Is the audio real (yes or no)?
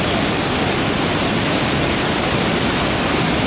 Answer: yes